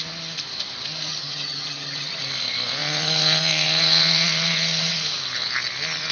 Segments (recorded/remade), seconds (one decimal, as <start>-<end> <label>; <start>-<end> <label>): 0.0-1.1 recorded; 1.1-2.2 remade; 2.2-6.1 recorded